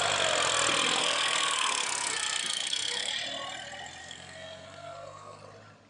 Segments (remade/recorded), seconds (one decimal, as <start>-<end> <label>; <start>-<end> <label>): 0.0-1.0 recorded; 1.0-3.1 remade; 3.1-4.0 recorded; 4.0-5.4 remade; 5.4-5.9 recorded